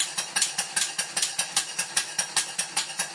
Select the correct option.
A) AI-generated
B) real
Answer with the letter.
B